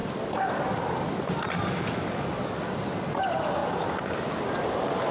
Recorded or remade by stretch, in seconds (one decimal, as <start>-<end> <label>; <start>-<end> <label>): 0.0-3.6 recorded; 3.6-5.1 remade